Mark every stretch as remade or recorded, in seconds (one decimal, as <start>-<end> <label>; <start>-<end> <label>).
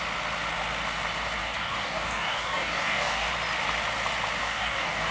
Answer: 0.0-1.4 recorded; 1.4-3.3 remade; 3.3-4.4 recorded; 4.4-5.1 remade